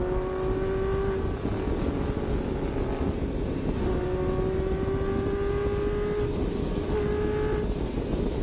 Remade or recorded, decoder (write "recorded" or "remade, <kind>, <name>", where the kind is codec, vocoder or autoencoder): recorded